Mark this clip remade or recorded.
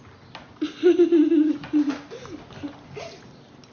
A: recorded